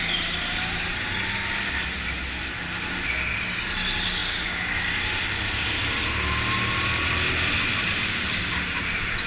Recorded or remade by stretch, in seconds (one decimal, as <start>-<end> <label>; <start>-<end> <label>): 0.0-9.3 recorded